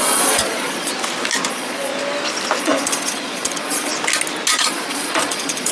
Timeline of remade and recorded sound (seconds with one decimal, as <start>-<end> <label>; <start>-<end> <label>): 0.0-0.9 remade; 0.9-1.5 recorded; 1.5-1.9 remade; 1.9-2.6 recorded; 2.6-3.9 remade; 3.9-4.5 recorded; 4.5-5.7 remade